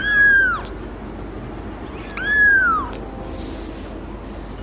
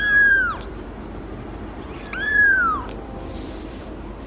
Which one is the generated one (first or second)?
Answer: second